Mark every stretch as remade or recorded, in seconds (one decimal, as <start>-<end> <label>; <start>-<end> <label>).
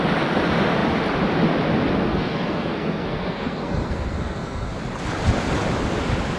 0.0-2.1 recorded; 2.1-4.8 remade; 4.8-6.4 recorded